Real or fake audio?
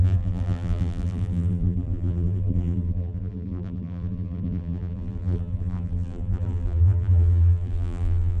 fake